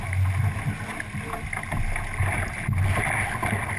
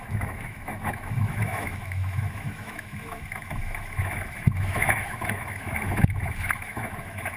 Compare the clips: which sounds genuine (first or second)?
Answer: first